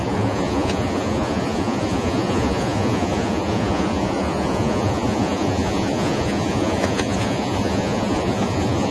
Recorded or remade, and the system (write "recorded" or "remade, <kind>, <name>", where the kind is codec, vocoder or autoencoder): remade, vocoder, Vocos